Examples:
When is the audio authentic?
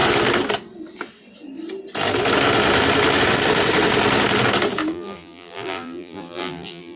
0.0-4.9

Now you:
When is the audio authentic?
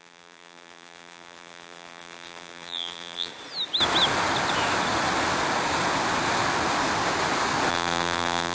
3.3-7.7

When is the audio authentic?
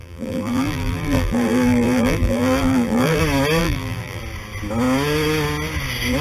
3.2-3.6; 4.2-6.2